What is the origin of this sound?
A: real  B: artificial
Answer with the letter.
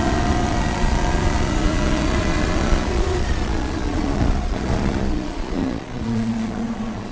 B